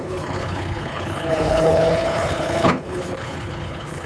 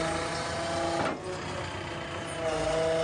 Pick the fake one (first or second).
first